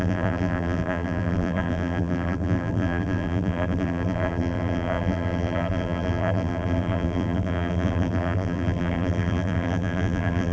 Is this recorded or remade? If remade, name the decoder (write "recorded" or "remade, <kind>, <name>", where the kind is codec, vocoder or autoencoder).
remade, vocoder, BigVGAN v2